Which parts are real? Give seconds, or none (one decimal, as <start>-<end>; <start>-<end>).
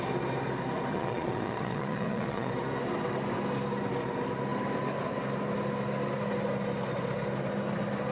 0.0-0.9; 2.5-8.1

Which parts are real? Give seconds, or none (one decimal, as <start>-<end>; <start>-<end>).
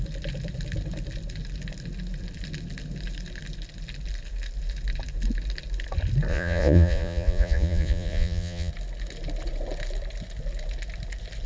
0.0-6.3; 8.7-11.5